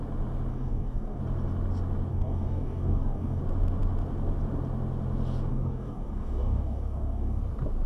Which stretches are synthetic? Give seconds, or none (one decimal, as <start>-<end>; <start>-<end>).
0.5-1.2; 2.1-3.4; 5.5-7.4